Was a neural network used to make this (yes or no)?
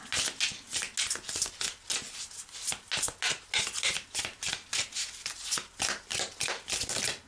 no